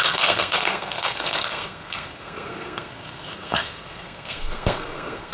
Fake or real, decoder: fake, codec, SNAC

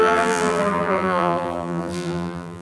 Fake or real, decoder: fake, vocoder, BigVGAN v2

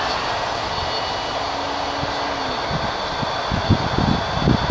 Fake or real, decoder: real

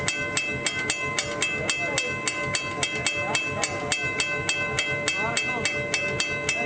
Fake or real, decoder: real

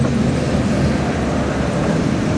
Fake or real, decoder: real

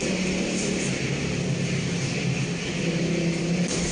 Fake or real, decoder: real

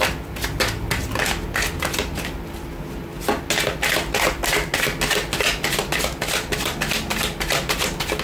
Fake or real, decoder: real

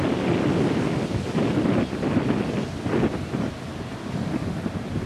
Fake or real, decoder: real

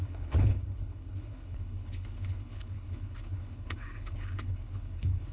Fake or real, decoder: fake, codec, HILCodec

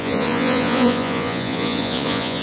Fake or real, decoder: fake, vocoder, Vocos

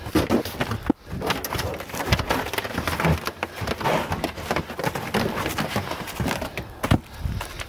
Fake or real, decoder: real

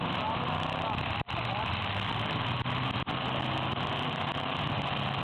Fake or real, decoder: real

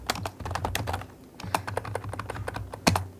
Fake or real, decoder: real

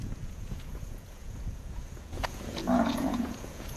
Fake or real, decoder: fake, vocoder, Vocos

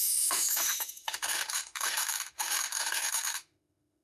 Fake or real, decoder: fake, autoencoder, DAC-VAE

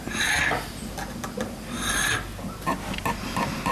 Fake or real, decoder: real